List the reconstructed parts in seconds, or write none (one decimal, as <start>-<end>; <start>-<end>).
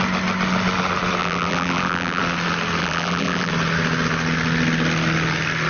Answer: 1.2-2.2; 2.8-3.5